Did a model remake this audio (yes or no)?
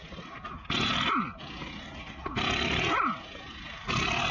no